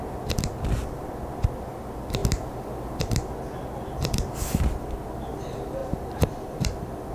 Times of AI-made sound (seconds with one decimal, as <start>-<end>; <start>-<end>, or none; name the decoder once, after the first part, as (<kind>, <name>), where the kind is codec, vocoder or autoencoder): 5.8-7.1 (vocoder, BigVGAN v2)